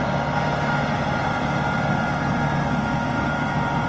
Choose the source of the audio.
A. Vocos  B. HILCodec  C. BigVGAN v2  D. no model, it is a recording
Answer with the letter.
D